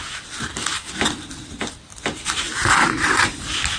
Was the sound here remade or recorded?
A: recorded